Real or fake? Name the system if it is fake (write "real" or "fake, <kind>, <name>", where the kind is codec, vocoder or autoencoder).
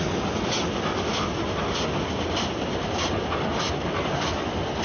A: real